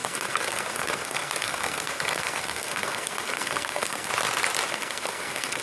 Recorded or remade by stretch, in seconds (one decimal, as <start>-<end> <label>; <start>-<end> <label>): 0.0-4.1 remade; 4.1-4.7 recorded; 4.7-5.6 remade